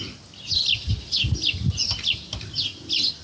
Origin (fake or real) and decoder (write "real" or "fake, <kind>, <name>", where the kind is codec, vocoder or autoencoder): real